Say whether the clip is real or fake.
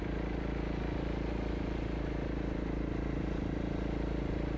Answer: real